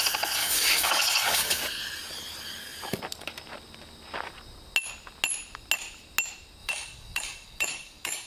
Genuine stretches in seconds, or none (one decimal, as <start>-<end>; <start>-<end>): 0.0-0.4; 1.6-6.6